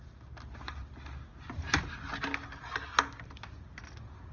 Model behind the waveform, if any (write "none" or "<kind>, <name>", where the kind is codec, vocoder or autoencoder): none